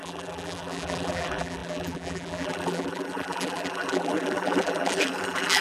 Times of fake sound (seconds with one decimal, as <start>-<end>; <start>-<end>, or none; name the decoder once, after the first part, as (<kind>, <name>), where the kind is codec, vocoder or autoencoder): 0.0-5.6 (vocoder, BigVGAN v2)